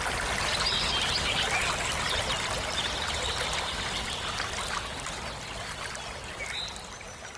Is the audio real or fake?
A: real